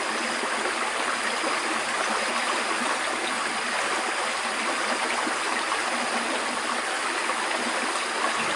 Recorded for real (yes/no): yes